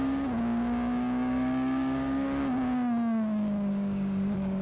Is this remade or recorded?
remade